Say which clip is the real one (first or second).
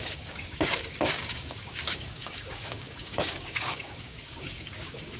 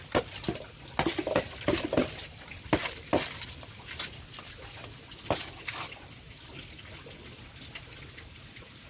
second